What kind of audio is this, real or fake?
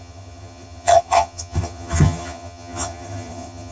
fake